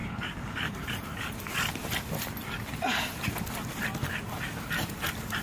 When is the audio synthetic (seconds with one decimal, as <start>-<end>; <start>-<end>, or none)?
none